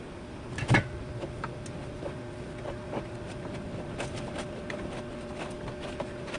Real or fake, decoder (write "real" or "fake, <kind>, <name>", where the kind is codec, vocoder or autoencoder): real